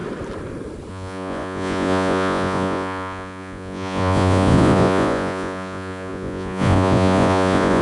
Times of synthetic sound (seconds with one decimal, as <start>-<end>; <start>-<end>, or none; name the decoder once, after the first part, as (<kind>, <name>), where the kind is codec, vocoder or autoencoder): 0.9-7.8 (vocoder, Vocos)